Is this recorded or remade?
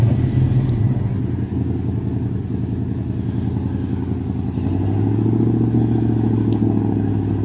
recorded